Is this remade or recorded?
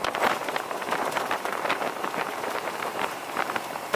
remade